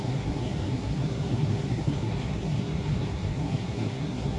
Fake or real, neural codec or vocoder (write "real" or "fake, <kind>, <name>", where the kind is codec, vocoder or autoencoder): fake, codec, SNAC